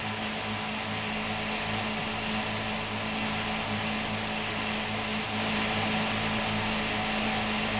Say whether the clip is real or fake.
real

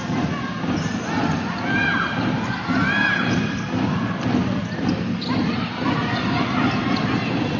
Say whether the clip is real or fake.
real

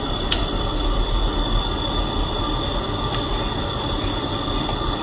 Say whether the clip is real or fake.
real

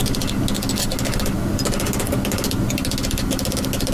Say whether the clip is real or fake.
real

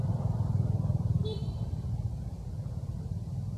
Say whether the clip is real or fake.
real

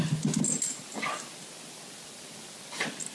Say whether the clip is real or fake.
real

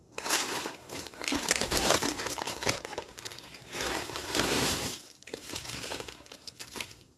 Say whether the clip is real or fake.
fake